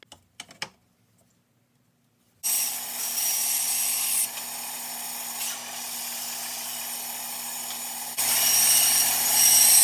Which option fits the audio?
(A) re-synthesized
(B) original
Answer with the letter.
B